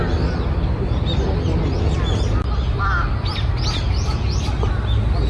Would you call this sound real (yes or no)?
yes